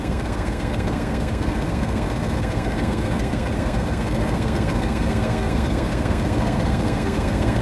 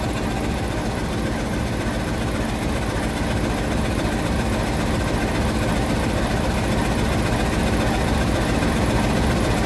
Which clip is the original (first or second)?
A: second